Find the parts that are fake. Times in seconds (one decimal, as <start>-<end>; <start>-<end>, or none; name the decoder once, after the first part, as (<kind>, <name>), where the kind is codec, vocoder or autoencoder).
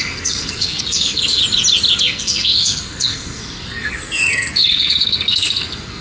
0.0-1.4 (codec, SNAC); 2.0-6.0